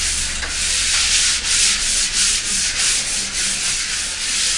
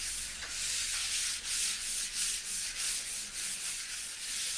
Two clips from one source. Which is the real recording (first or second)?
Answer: first